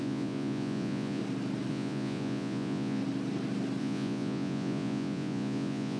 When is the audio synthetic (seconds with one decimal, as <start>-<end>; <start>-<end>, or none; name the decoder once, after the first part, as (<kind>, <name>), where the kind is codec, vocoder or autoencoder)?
0.0-1.2 (vocoder, Vocos); 1.7-3.0; 3.8-6.0